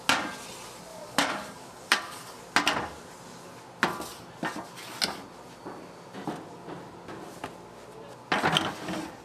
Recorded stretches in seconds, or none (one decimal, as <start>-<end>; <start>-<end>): 0.0-0.9; 2.4-9.2